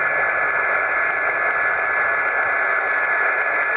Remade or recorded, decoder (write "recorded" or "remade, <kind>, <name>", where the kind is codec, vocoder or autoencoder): recorded